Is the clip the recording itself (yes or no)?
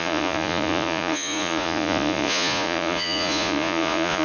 no